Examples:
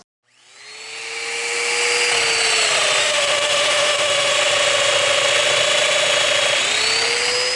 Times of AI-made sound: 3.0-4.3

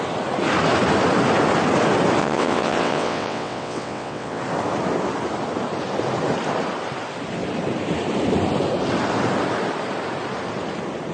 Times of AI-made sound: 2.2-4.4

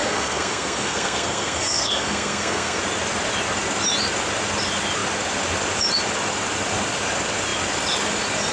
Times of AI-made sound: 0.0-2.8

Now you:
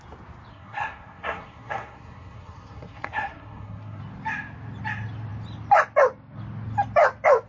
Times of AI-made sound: 0.5-4.0

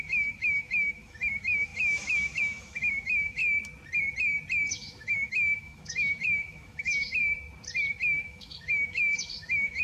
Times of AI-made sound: 0.0-3.4; 4.7-7.2; 8.0-9.8

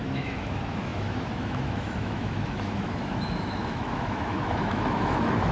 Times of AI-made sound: 0.0-5.5

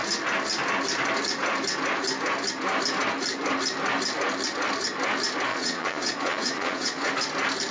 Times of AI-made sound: 5.5-7.1